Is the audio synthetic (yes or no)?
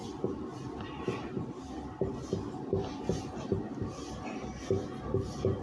no